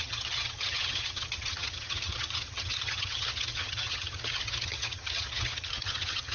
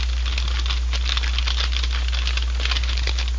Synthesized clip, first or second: first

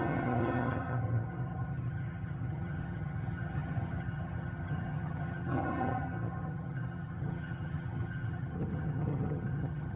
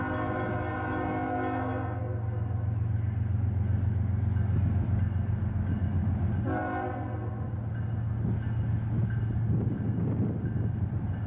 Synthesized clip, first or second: first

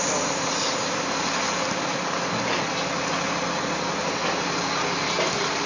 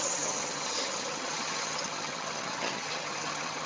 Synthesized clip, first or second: second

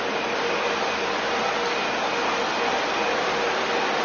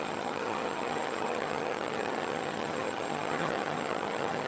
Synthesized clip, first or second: second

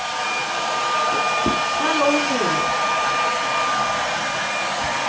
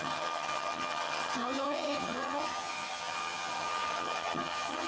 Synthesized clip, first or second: second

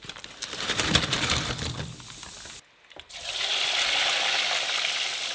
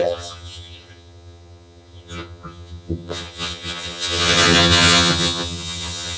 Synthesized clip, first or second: second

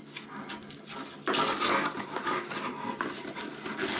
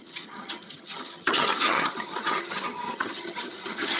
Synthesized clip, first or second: second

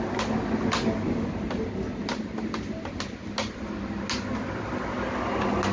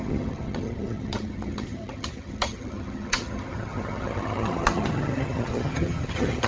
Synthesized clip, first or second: second